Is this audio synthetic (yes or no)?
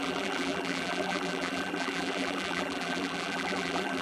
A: yes